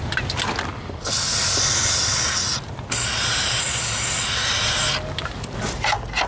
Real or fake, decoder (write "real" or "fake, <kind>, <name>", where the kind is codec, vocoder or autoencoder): real